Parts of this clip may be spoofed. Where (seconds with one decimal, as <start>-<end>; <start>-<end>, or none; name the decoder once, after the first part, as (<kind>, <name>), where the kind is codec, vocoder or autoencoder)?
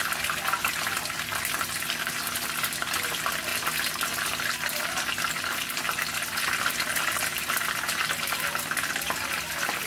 none